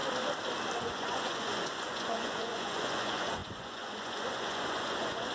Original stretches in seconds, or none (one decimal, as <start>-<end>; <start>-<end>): 0.0-0.8